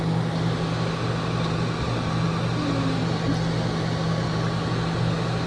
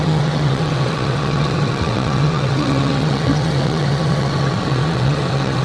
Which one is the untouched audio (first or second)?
first